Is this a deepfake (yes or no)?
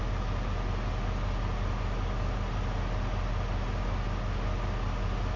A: no